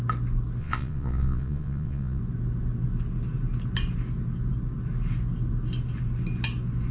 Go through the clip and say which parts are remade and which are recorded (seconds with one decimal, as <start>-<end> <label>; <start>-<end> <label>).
0.0-0.6 recorded; 0.6-2.2 remade; 2.2-6.9 recorded

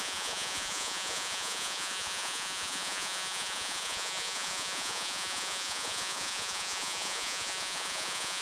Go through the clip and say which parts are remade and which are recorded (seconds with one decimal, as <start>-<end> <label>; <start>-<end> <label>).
0.0-8.4 remade

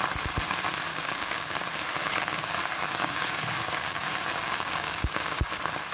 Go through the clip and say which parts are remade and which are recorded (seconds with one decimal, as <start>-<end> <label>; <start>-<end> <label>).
0.0-0.9 recorded; 0.9-1.5 remade; 1.5-2.0 recorded; 2.0-5.5 remade; 5.5-5.9 recorded

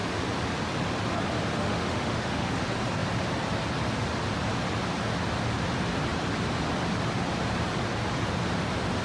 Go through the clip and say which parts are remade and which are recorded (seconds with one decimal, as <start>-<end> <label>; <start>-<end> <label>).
0.0-1.5 recorded; 1.5-2.6 remade; 2.6-9.0 recorded

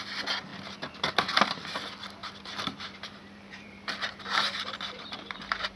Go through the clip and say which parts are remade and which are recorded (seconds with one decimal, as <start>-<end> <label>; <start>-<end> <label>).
0.0-2.2 recorded; 2.2-5.8 remade

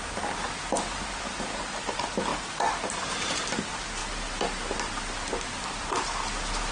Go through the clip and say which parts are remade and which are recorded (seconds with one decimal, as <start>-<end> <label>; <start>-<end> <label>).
0.0-6.7 recorded